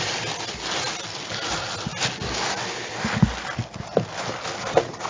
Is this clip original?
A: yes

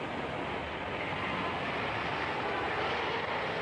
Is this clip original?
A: yes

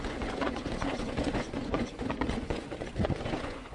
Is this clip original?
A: no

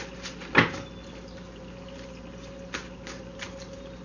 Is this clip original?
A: yes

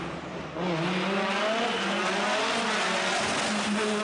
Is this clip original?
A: yes